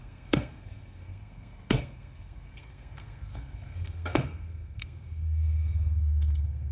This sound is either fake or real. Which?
fake